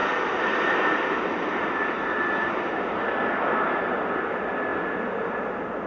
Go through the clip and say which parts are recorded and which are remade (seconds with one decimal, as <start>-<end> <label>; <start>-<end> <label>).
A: 0.0-5.9 recorded